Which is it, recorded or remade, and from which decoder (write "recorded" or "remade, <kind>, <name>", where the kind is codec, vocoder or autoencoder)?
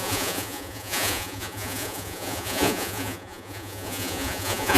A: remade, vocoder, Vocos